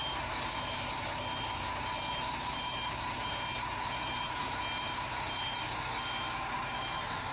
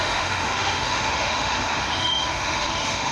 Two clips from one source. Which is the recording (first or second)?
first